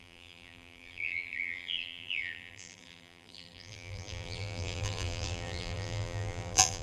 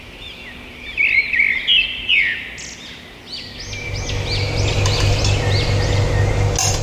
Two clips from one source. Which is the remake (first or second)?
first